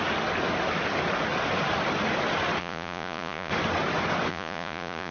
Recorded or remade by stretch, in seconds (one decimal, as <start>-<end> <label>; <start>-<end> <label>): 0.0-2.6 recorded; 2.6-3.5 remade; 3.5-4.3 recorded; 4.3-5.1 remade